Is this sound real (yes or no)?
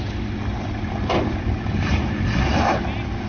yes